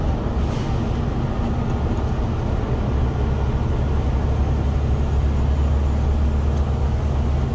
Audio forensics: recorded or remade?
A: recorded